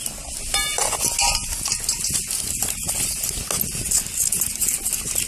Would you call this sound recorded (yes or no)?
yes